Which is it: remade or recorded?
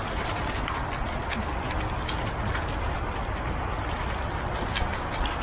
recorded